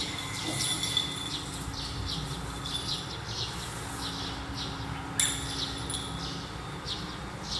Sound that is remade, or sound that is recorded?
recorded